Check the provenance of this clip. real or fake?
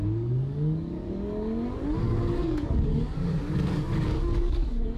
fake